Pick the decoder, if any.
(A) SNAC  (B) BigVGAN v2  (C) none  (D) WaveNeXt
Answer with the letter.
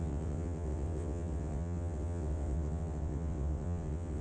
D